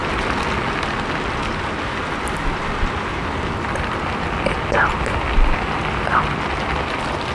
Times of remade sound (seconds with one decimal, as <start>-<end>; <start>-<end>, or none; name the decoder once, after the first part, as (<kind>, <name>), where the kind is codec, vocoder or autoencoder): none